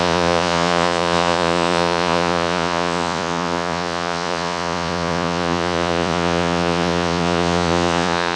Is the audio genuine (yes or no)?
no